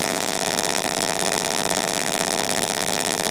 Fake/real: fake